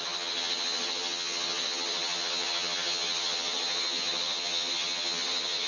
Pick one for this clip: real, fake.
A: fake